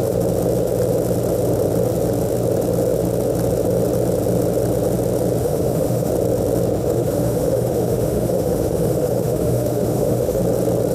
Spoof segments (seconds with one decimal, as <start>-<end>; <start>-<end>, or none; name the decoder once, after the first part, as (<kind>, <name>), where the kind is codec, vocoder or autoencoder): 5.4-6.1 (autoencoder, DAC-VAE); 6.8-10.4